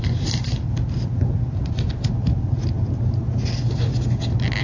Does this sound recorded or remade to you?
recorded